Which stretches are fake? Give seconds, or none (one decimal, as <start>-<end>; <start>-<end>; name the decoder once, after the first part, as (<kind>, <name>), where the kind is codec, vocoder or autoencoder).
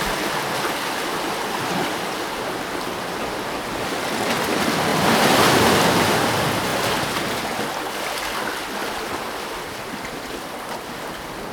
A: none